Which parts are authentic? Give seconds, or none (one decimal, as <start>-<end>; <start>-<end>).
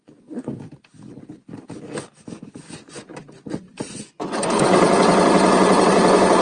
0.5-2.2; 3.1-3.9